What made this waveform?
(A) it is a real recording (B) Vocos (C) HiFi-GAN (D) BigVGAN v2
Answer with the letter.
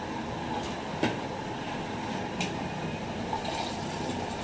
D